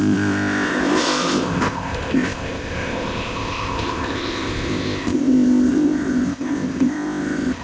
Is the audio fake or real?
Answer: fake